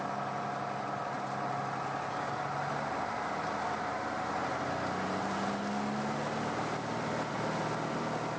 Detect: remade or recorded recorded